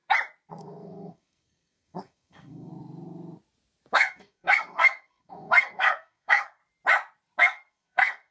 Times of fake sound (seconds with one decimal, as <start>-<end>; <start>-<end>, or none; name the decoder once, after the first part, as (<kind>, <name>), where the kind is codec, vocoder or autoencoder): 0.5-2.7 (codec, SNAC); 3.9-6.6; 7.4-8.3